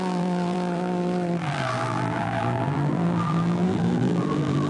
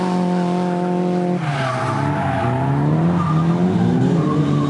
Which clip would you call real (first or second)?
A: second